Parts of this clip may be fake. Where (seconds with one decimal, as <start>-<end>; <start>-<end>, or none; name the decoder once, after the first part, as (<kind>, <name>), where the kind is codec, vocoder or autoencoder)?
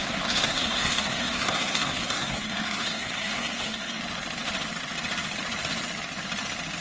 0.0-4.0 (codec, SNAC)